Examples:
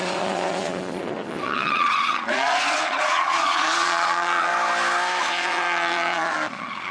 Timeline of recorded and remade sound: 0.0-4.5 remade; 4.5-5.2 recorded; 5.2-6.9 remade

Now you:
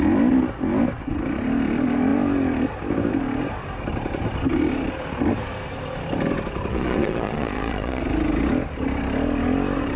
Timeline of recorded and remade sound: 0.0-6.7 recorded; 6.7-8.0 remade; 8.0-10.0 recorded